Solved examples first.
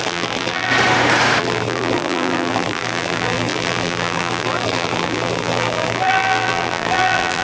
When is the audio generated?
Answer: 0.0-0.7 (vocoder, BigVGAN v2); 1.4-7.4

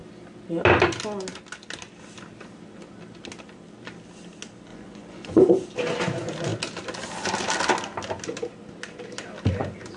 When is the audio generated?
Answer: 4.7-5.5 (vocoder, Vocos)

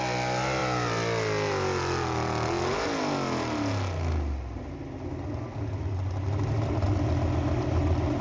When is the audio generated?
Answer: none